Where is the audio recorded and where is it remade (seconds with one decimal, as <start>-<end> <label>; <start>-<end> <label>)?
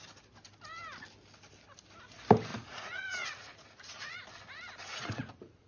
0.0-2.5 recorded; 2.5-4.2 remade; 4.2-4.9 recorded; 4.9-5.7 remade